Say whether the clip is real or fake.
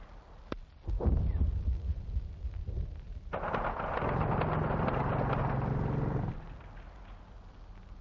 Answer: real